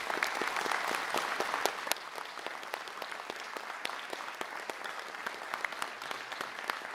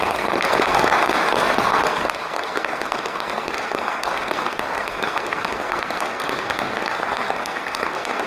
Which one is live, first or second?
first